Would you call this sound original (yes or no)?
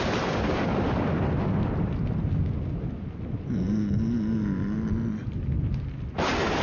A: yes